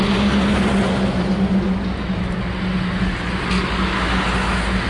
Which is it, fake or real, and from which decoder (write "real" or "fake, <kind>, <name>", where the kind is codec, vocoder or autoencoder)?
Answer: real